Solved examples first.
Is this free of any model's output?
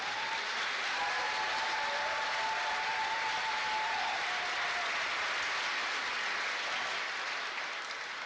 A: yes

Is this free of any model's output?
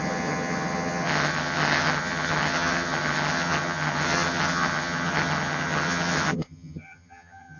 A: no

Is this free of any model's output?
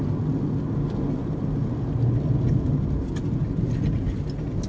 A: yes